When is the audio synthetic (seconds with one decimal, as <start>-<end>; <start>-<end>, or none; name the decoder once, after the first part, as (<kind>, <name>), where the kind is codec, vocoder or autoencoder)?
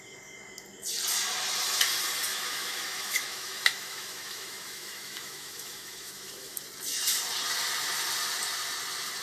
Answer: 2.3-6.6 (autoencoder, DAC-VAE)